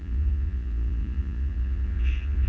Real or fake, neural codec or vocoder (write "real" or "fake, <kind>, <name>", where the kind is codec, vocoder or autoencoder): fake, vocoder, Vocos